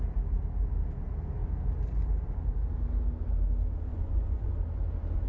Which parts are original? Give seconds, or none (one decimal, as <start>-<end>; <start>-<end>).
0.0-3.9; 4.5-5.3